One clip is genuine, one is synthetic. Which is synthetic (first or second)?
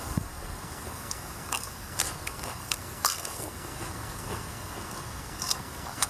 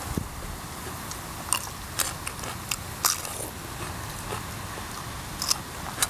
first